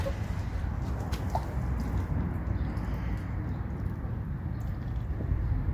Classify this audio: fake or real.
real